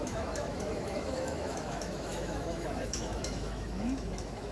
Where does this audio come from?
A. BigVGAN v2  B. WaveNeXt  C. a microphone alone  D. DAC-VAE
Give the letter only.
D